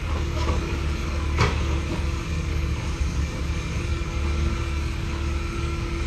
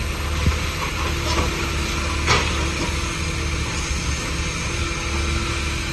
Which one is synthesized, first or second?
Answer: first